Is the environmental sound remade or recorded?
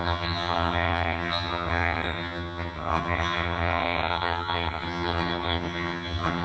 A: remade